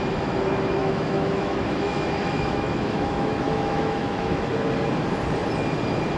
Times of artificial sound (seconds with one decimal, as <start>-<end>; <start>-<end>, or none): 0.8-4.5